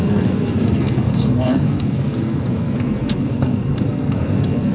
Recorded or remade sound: remade